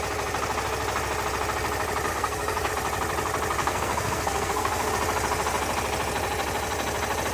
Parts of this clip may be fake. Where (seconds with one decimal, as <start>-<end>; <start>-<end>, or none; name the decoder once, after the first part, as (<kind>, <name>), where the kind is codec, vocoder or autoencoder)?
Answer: 2.1-2.7 (codec, SNAC); 3.6-4.9